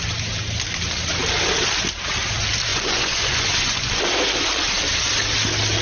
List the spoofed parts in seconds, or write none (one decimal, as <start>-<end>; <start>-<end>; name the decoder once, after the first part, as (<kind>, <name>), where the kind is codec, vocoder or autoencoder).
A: 2.7-4.0 (vocoder, Vocos)